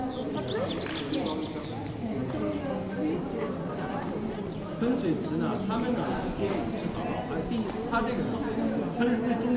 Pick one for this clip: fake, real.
real